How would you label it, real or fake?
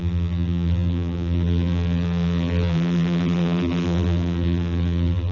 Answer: fake